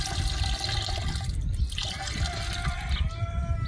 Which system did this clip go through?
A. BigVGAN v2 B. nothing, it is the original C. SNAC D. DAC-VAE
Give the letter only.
B